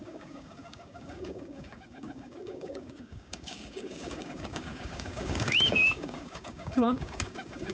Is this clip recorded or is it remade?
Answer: remade